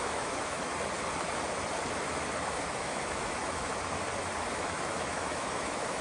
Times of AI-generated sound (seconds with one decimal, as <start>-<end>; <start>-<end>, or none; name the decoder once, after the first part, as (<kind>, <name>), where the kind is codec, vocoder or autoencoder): 0.0-0.7 (autoencoder, DAC-VAE); 2.4-3.7; 4.5-6.0